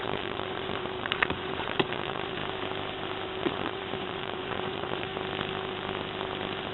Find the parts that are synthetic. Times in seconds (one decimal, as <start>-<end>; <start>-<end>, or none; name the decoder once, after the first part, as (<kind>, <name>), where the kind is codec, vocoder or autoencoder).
0.0-2.4 (vocoder, Vocos); 3.4-5.1